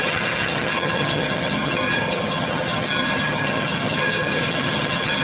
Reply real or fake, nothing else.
fake